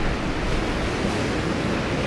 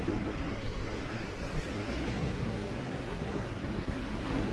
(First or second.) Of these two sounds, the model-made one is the second